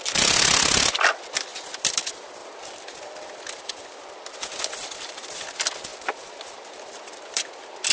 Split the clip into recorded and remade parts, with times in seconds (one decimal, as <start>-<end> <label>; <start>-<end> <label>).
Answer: 0.0-1.5 recorded; 1.5-2.0 remade; 2.0-2.4 recorded; 2.4-5.4 remade; 5.4-5.9 recorded; 5.9-7.5 remade; 7.5-7.9 recorded